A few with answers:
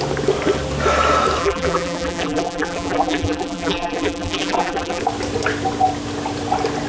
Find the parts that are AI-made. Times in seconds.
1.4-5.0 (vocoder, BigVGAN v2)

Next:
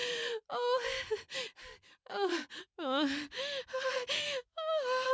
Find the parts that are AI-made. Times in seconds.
2.6-5.1 (autoencoder, DAC-VAE)

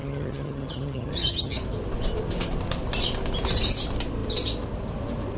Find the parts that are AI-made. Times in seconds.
0.0-1.6 (vocoder, HiFi-GAN)

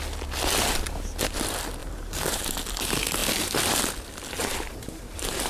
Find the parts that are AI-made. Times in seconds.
1.8-2.6 (vocoder, BigVGAN v2); 4.4-5.5

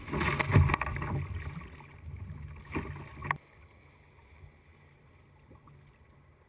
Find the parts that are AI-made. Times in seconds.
none

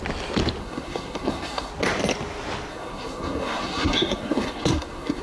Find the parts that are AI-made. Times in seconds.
0.6-1.7 (codec, SNAC); 2.7-5.2